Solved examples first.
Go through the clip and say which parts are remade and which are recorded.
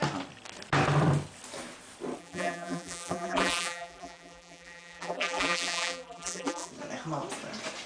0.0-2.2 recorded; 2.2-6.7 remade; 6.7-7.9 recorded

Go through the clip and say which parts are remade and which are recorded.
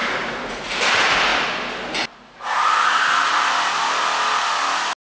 0.0-5.1 recorded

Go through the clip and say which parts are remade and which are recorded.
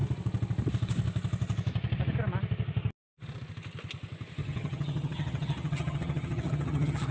0.0-4.4 recorded; 4.4-7.1 remade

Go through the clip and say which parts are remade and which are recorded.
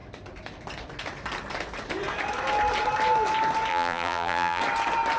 0.0-3.7 recorded; 3.7-4.6 remade; 4.6-5.2 recorded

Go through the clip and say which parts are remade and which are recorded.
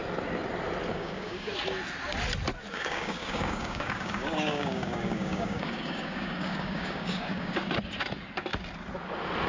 0.0-0.9 recorded; 0.9-1.5 remade; 1.5-2.7 recorded; 2.7-7.6 remade; 7.6-9.5 recorded